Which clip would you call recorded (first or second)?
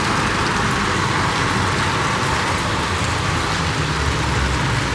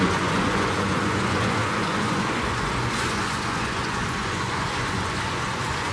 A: first